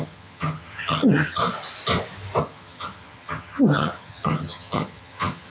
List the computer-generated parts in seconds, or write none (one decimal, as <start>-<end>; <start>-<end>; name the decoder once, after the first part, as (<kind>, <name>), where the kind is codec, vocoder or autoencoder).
0.0-1.4 (vocoder, HiFi-GAN); 2.4-5.5